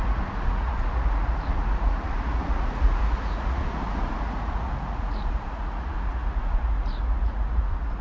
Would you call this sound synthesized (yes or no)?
yes